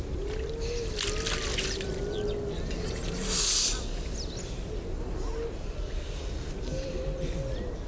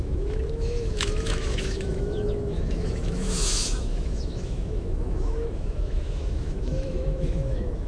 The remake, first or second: second